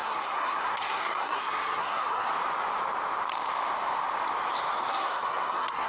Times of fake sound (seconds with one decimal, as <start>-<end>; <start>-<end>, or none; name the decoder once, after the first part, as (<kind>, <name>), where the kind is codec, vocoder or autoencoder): 0.0-2.3 (codec, SNAC); 4.9-5.9